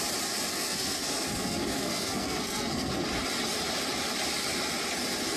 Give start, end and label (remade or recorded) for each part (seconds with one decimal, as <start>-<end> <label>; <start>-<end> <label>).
0.0-0.5 recorded; 0.5-2.9 remade; 2.9-5.4 recorded